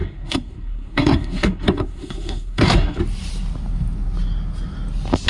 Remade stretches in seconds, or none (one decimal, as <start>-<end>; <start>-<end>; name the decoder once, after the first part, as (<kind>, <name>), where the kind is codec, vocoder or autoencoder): 0.0-3.0 (codec, SNAC)